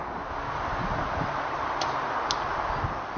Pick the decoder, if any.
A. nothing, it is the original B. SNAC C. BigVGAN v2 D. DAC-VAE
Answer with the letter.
A